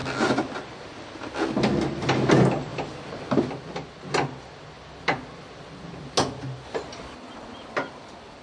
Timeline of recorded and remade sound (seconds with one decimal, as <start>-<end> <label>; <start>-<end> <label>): 0.0-8.4 recorded